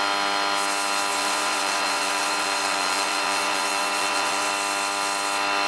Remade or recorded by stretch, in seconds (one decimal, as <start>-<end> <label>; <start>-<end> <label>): 0.0-1.1 recorded; 1.1-4.5 remade; 4.5-5.7 recorded